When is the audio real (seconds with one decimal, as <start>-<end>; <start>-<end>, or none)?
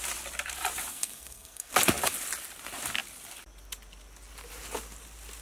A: 0.0-0.9; 1.7-5.4